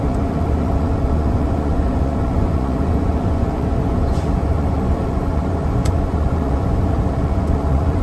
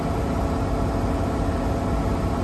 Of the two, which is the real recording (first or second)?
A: second